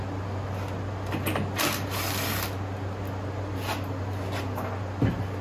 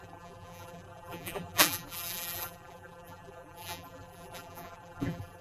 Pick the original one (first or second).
first